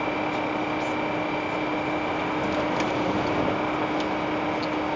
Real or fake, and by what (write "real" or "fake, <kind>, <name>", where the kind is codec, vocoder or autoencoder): real